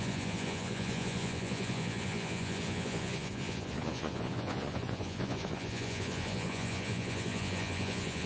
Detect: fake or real fake